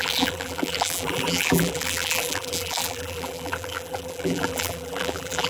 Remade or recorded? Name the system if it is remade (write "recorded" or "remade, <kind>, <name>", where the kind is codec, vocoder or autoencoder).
remade, vocoder, BigVGAN v2